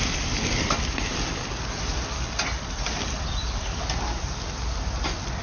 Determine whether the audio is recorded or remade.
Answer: remade